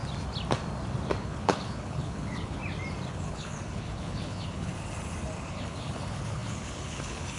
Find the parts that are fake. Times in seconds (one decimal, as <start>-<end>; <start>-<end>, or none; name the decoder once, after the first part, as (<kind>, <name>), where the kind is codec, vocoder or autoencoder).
1.2-2.6 (codec, HILCodec); 3.1-4.7; 5.5-7.4